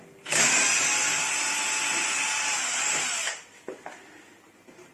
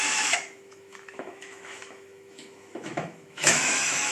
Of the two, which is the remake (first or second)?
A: second